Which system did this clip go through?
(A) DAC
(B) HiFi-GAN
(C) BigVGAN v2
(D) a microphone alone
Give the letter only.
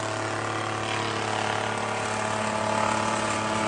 D